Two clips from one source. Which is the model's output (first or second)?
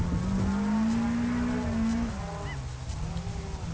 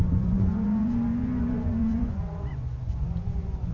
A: second